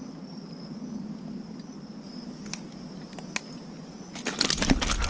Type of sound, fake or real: real